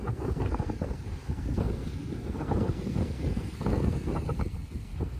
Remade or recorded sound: remade